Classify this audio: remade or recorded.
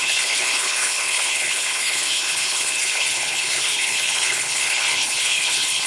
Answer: remade